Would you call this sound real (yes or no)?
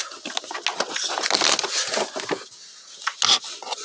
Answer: yes